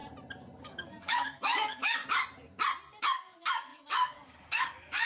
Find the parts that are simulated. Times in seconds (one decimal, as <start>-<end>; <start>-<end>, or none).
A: 0.6-2.0; 3.0-5.1